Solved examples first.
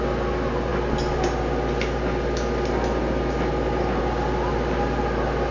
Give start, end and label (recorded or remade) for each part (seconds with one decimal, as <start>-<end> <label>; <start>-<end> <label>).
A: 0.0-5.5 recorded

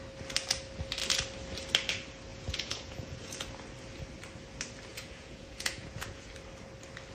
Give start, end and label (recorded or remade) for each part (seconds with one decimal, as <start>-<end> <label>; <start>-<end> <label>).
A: 0.0-2.3 recorded; 2.3-3.3 remade; 3.3-4.9 recorded; 4.9-6.3 remade; 6.3-7.1 recorded

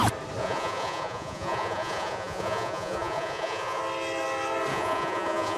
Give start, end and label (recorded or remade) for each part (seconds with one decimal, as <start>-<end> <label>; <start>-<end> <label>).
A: 0.0-0.4 recorded; 0.4-3.8 remade; 3.8-4.7 recorded; 4.7-5.6 remade

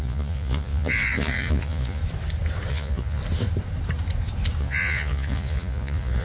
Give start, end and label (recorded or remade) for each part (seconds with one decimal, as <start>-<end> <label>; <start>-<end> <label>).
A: 0.0-2.0 remade; 2.0-2.7 recorded; 2.7-3.2 remade; 3.2-4.6 recorded; 4.6-6.2 remade

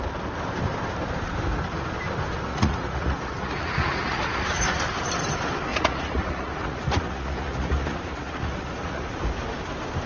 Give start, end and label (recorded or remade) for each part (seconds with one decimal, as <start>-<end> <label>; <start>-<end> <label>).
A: 0.0-2.5 recorded; 2.5-4.6 remade; 4.6-5.7 recorded; 5.7-9.2 remade; 9.2-10.1 recorded

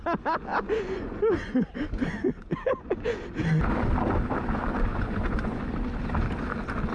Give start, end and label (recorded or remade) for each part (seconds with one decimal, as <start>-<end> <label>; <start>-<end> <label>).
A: 0.0-0.5 recorded; 0.5-3.2 remade; 3.2-4.9 recorded; 4.9-5.6 remade; 5.6-6.9 recorded

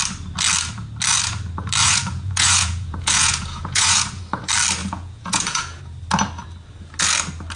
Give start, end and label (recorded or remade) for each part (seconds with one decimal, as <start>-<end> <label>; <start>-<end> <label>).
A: 0.0-1.8 recorded; 1.8-4.2 remade; 4.2-4.8 recorded; 4.8-5.8 remade; 5.8-7.6 recorded

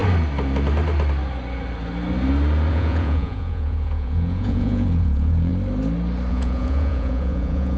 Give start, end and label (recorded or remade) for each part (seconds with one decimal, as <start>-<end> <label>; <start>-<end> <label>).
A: 0.0-2.7 recorded; 2.7-5.5 remade; 5.5-6.3 recorded; 6.3-7.8 remade